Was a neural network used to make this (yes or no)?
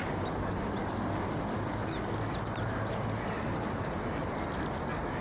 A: no